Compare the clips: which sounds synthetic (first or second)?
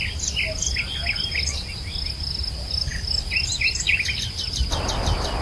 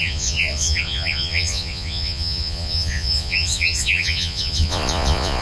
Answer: second